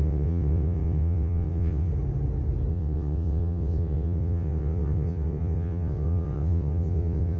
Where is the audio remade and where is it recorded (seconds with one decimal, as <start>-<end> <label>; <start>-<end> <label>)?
0.0-1.9 remade; 1.9-2.7 recorded; 2.7-7.4 remade